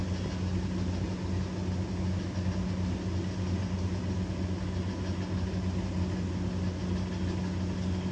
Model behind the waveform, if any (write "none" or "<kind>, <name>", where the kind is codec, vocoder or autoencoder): none